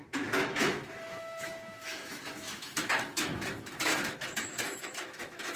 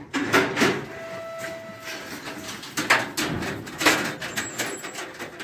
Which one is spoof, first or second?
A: first